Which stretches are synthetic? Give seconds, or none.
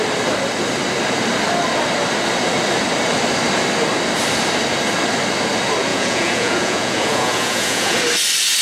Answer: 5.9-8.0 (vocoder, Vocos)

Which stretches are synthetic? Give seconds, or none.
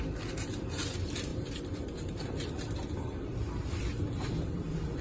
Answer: none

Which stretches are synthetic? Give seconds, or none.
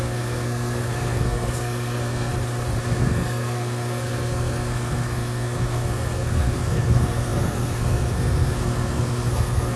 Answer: 0.0-2.3 (codec, SNAC); 2.8-9.8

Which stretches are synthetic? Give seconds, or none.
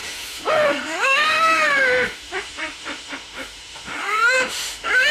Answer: 0.0-5.1 (autoencoder, DAC-VAE)